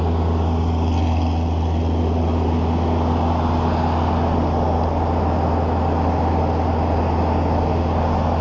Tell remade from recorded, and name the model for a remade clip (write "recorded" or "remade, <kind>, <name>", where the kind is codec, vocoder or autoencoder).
recorded